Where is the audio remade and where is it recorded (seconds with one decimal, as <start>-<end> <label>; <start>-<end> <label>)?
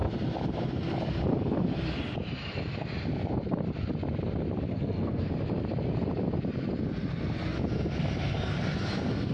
0.0-4.7 recorded; 4.7-5.3 remade; 5.3-9.3 recorded